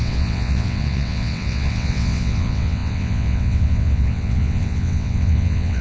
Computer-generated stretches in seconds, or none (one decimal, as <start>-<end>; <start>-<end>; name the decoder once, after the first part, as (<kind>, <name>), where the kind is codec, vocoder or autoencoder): 0.0-5.8 (vocoder, WaveNeXt)